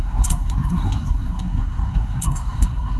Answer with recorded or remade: remade